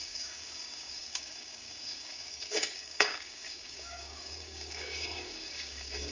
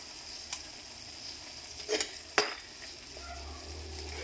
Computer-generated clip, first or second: first